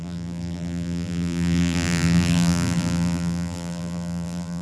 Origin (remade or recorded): remade